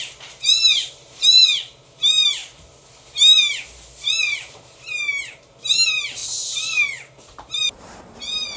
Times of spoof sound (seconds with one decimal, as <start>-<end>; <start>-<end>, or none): 0.0-2.4; 4.2-6.2; 7.5-8.6